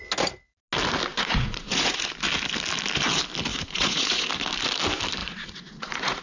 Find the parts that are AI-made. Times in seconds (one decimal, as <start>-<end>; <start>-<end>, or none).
1.1-2.1; 3.5-4.3; 5.2-6.2